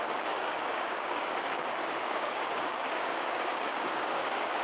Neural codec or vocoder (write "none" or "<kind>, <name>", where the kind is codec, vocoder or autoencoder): codec, DAC